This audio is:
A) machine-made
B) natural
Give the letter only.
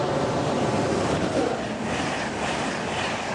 B